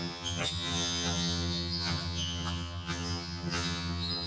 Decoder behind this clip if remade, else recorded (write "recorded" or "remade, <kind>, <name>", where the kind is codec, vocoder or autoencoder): remade, vocoder, HiFi-GAN